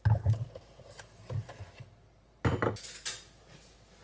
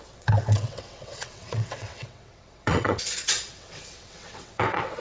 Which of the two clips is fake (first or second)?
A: second